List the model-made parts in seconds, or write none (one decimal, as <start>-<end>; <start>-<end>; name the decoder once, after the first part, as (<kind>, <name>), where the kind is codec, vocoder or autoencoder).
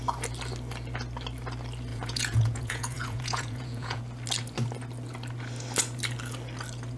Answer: 1.9-4.0 (vocoder, Vocos)